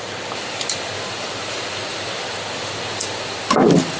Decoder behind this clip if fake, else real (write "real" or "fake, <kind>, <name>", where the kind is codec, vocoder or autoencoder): real